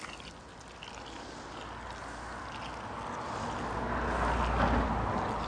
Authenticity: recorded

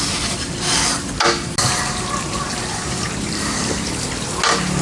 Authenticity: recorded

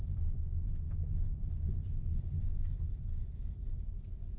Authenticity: recorded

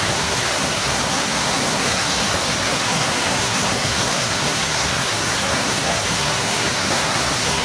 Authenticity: remade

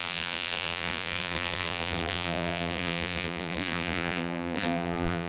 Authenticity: remade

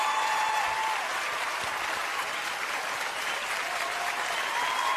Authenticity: recorded